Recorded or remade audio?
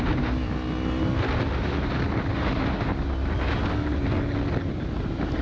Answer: recorded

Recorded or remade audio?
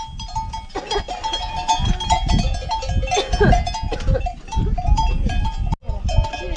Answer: recorded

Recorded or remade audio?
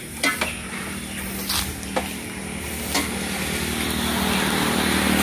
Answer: recorded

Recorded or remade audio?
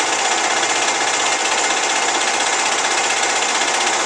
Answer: recorded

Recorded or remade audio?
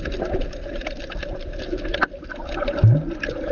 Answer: recorded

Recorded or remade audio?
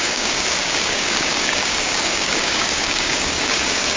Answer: remade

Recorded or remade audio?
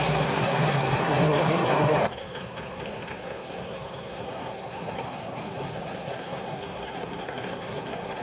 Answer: remade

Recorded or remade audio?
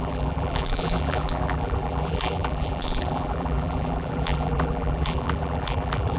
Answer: remade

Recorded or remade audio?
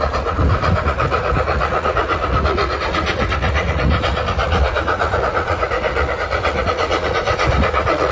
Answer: remade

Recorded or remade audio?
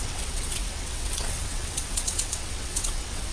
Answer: remade